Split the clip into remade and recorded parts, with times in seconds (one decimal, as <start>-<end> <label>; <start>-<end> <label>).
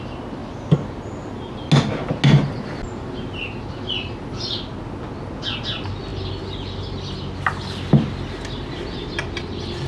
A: 0.0-9.9 recorded